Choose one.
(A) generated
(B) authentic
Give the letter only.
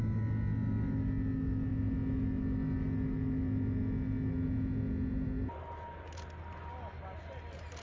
B